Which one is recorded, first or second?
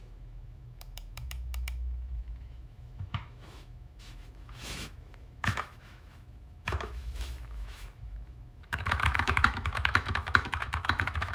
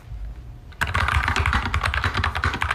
second